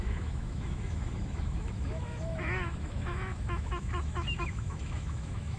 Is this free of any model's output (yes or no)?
no